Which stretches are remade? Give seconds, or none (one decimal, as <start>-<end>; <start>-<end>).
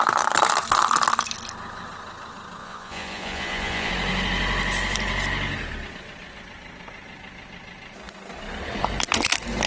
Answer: 2.6-3.9